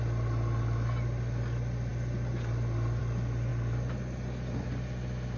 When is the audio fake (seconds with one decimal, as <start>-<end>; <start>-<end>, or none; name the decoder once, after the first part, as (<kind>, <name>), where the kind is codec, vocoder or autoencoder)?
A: none

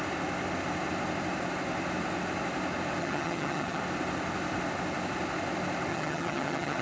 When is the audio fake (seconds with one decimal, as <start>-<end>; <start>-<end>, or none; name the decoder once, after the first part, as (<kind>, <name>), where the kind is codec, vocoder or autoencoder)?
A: 3.0-3.8 (vocoder, HiFi-GAN); 5.9-6.8

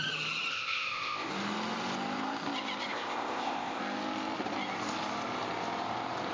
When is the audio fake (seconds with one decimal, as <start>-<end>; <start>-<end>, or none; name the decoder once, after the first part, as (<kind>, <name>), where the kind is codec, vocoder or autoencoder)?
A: 0.5-1.3 (codec, ZipCodec); 2.9-3.8

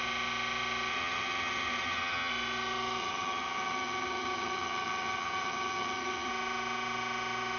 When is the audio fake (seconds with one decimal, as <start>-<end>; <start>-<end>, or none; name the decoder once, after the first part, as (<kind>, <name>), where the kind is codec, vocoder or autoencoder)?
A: 0.9-2.3 (vocoder, HiFi-GAN); 3.0-6.3

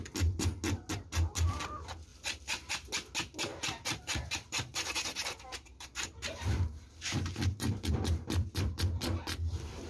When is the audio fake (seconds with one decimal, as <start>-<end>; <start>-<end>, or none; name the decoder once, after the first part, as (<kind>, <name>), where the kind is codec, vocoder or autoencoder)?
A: 2.1-2.7 (vocoder, BigVGAN v2); 3.5-7.9

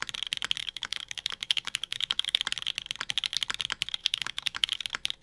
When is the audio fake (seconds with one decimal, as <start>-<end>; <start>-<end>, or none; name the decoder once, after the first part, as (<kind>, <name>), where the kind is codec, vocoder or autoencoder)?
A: 0.6-2.4 (codec, DAC); 4.0-4.8

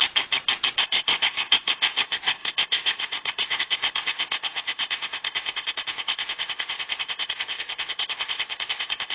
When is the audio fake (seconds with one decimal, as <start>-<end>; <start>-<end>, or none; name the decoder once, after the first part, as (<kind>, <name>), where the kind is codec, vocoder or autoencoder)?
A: 0.8-9.1 (codec, ZipCodec)